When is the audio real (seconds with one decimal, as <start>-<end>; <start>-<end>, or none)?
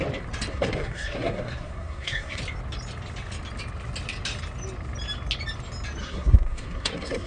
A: 0.0-0.5; 2.4-6.0